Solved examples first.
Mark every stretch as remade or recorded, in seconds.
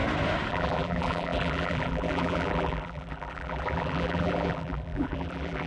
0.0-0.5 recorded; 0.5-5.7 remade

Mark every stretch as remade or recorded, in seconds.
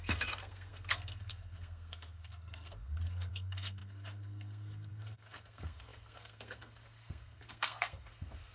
0.0-8.5 remade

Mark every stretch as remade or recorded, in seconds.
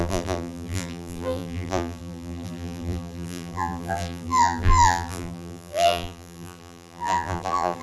0.0-7.8 remade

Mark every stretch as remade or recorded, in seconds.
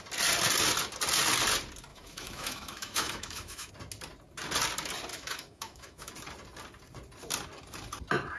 0.0-1.9 recorded; 1.9-3.7 remade; 3.7-5.1 recorded; 5.1-6.1 remade; 6.1-8.4 recorded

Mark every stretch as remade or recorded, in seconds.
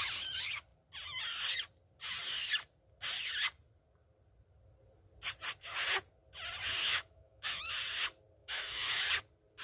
0.0-6.8 recorded; 6.8-7.6 remade; 7.6-8.4 recorded; 8.4-9.0 remade; 9.0-9.6 recorded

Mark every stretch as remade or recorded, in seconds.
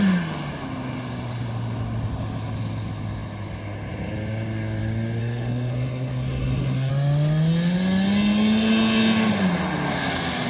0.0-5.2 recorded; 5.2-6.9 remade; 6.9-10.5 recorded